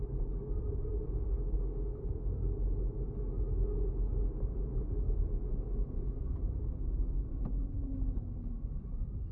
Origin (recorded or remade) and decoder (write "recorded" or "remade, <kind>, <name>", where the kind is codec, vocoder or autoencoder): recorded